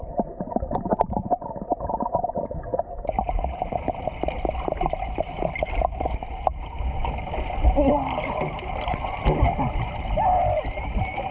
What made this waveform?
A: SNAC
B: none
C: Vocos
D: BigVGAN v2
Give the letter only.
B